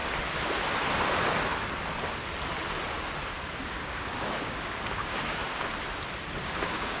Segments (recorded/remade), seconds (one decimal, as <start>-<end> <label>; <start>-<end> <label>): 0.0-3.8 recorded; 3.8-5.4 remade; 5.4-6.4 recorded; 6.4-7.0 remade